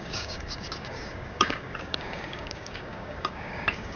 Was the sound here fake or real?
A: fake